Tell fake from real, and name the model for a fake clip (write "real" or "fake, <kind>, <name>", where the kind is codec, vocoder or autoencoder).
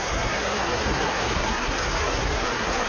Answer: fake, codec, SNAC